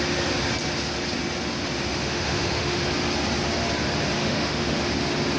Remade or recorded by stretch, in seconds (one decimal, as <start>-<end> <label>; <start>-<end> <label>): 0.0-1.9 recorded; 1.9-2.8 remade; 2.8-4.2 recorded; 4.2-5.0 remade; 5.0-5.4 recorded